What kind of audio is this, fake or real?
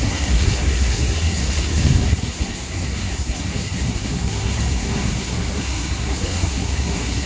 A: fake